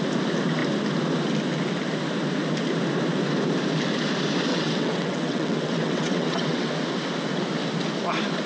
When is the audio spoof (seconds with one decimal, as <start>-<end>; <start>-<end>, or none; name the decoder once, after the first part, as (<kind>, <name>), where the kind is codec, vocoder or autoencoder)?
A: 4.5-6.7 (vocoder, WaveNeXt)